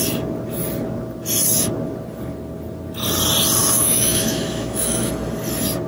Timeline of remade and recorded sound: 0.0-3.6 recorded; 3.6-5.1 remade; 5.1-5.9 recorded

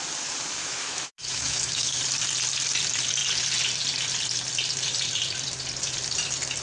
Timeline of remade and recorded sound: 0.0-0.6 recorded; 0.6-2.0 remade; 2.0-6.6 recorded

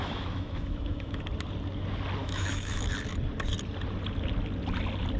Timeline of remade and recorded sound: 0.0-1.2 remade; 1.2-2.2 recorded; 2.2-2.9 remade; 2.9-5.2 recorded

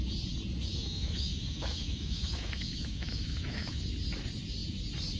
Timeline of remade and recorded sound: 0.0-0.7 recorded; 0.7-3.8 remade; 3.8-5.2 recorded

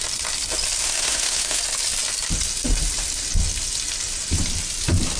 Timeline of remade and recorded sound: 0.0-0.8 recorded; 0.8-1.6 remade; 1.6-5.2 recorded